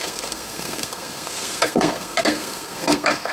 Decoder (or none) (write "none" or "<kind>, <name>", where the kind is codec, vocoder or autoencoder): codec, SNAC